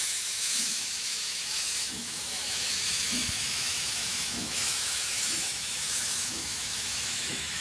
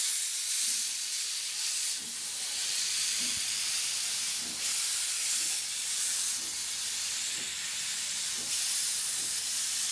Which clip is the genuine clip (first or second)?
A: second